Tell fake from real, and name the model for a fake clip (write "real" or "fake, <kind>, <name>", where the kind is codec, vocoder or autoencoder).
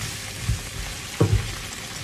real